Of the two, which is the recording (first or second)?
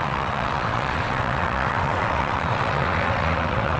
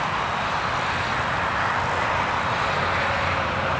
second